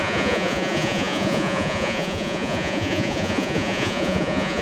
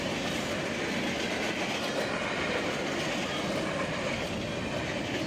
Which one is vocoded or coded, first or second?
first